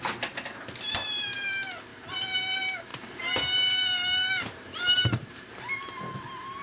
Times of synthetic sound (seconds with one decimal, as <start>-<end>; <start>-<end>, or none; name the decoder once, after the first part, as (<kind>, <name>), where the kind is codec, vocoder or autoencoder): 1.9-2.5 (vocoder, BigVGAN v2); 2.9-5.6